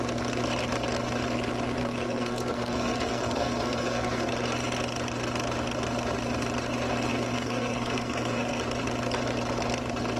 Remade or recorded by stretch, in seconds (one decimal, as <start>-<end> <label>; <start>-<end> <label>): 0.0-1.8 recorded; 1.8-4.2 remade; 4.2-7.1 recorded; 7.1-8.6 remade; 8.6-10.2 recorded